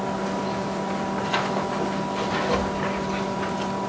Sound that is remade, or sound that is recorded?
recorded